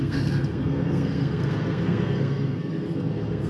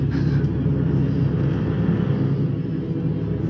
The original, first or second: second